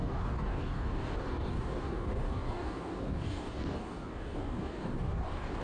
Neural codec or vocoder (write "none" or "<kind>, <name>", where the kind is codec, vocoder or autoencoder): codec, DAC